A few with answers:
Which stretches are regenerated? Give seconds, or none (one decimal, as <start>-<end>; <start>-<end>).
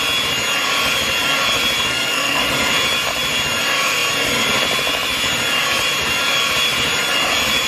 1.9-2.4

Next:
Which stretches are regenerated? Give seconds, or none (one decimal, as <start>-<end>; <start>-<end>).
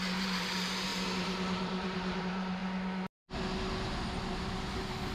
0.0-2.6; 4.4-5.1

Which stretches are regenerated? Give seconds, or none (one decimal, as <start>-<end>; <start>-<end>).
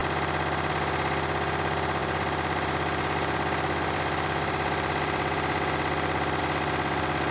none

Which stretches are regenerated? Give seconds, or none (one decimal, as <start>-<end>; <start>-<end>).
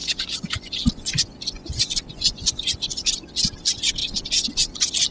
0.0-3.1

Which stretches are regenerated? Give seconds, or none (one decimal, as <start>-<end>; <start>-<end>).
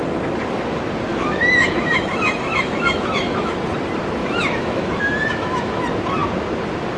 1.1-3.5; 4.2-5.8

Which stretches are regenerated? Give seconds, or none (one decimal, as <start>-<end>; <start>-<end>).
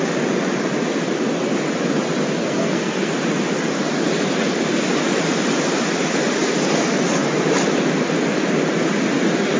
2.4-3.1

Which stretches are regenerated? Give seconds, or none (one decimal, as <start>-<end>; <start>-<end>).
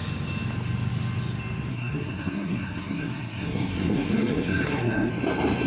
1.7-5.1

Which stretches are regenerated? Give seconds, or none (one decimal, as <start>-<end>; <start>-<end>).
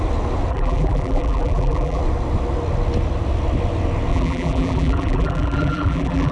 0.5-2.0; 4.1-6.3